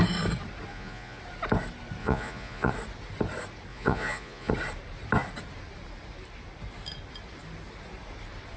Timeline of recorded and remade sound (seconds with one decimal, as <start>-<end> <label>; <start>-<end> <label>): 0.0-0.7 recorded; 0.7-1.2 remade; 1.2-2.0 recorded; 2.0-2.7 remade; 2.7-3.7 recorded; 3.7-4.5 remade; 4.5-8.6 recorded